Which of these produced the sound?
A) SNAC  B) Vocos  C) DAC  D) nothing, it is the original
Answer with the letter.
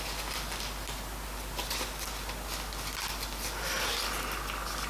D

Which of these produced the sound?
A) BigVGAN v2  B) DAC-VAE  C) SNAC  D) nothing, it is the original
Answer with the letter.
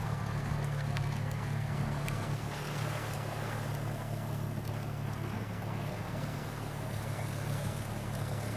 C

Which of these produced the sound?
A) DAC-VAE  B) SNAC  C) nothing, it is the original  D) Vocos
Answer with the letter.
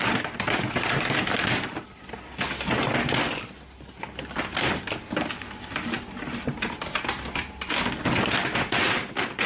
C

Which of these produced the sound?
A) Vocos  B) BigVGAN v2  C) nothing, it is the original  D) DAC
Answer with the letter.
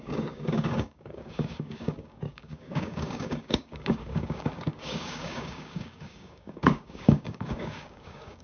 D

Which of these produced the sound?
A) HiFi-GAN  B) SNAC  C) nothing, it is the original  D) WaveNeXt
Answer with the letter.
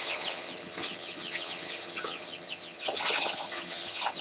A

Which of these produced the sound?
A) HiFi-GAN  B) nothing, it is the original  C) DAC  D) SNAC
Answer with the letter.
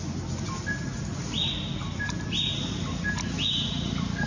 B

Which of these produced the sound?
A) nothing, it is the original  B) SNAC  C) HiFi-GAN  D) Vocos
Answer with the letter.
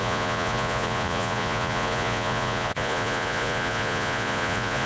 D